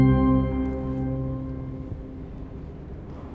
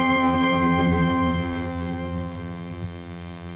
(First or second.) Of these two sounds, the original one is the first